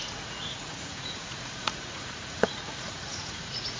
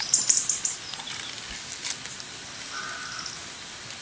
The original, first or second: second